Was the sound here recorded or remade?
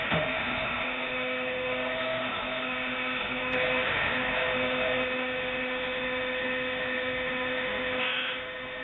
remade